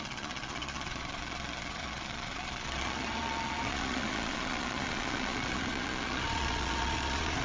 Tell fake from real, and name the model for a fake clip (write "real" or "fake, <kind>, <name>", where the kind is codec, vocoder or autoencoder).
fake, vocoder, Vocos